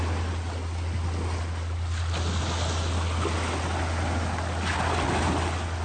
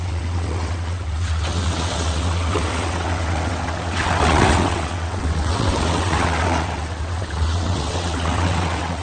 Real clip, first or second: first